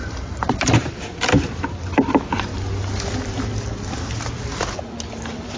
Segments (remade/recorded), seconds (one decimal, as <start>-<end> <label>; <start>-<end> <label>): 0.0-1.0 remade; 1.0-5.6 recorded